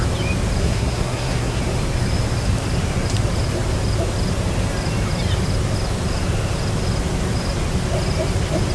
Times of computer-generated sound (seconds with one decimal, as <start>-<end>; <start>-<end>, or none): 0.6-1.6